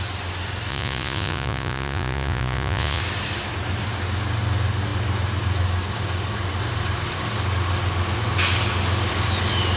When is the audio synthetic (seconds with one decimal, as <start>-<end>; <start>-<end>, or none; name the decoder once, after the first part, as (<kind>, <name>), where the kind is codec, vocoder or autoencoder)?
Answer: 0.7-3.0 (vocoder, Vocos)